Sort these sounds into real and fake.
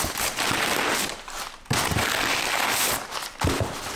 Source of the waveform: real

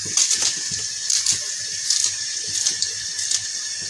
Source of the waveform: real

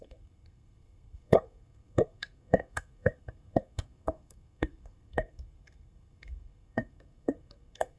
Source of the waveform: fake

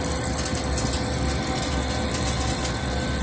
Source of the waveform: real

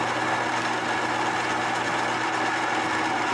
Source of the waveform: real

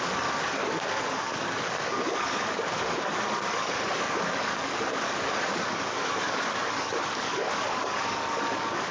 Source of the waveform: fake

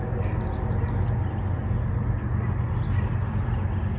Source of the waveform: real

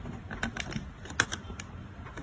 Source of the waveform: real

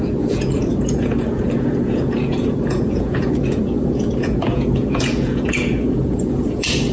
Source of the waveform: fake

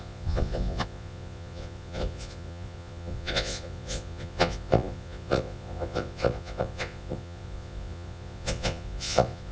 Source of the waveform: fake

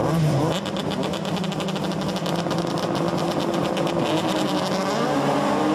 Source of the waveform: real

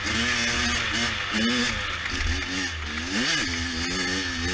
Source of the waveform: real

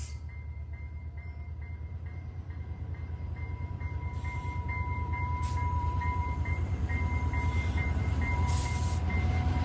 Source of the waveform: fake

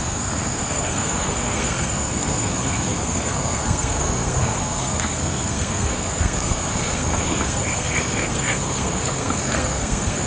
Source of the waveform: fake